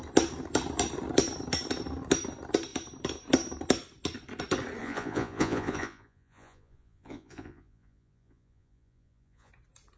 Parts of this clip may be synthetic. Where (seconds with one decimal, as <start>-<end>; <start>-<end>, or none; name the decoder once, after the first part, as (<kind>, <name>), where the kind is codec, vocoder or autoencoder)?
4.8-9.5 (vocoder, Vocos)